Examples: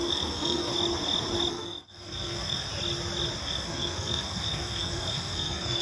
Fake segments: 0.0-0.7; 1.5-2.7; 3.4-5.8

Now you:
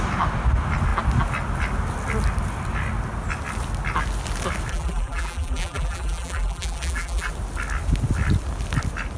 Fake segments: 4.7-7.3

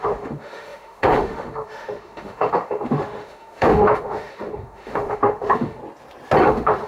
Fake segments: 0.0-5.8; 6.4-6.9

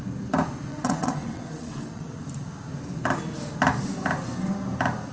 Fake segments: 0.7-2.2

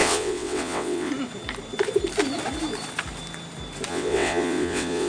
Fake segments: 0.0-1.1; 3.9-5.1

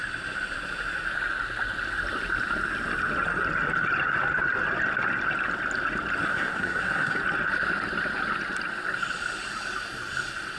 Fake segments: 6.3-7.2